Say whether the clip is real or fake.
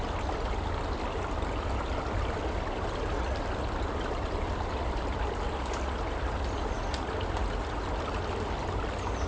real